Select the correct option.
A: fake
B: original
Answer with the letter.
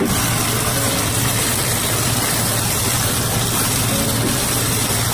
A